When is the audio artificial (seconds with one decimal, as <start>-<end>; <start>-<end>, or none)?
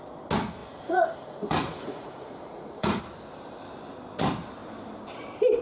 0.6-3.0